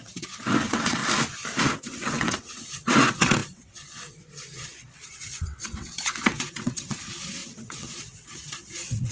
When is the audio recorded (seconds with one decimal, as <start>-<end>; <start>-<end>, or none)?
1.0-1.8